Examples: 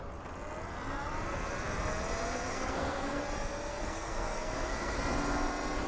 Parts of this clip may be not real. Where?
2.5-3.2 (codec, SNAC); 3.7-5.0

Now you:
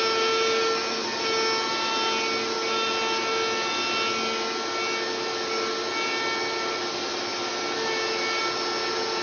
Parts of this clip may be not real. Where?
none

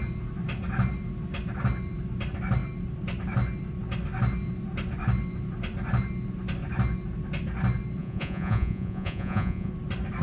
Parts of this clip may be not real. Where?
8.0-9.7 (vocoder, Vocos)

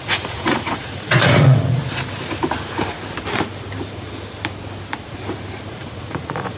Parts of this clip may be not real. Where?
0.0-1.8 (vocoder, Vocos); 5.7-6.6

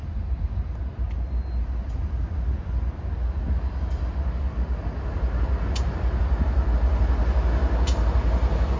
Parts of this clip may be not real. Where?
none

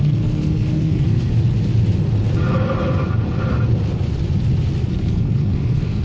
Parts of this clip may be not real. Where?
0.0-1.3 (codec, SNAC); 4.9-6.0